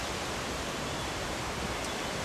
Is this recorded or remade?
remade